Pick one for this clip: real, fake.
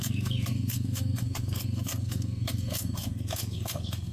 fake